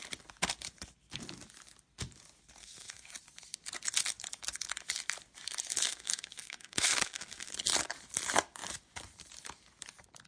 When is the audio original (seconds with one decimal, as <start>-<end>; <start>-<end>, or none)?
0.0-2.6; 3.1-5.7; 7.5-10.3